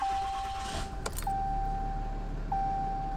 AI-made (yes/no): no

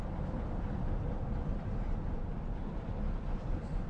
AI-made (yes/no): yes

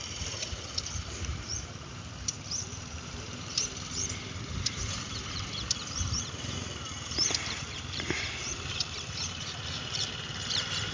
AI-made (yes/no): yes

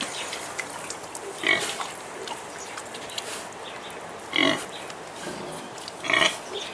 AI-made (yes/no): no